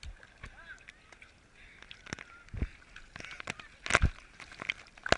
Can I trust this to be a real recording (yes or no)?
yes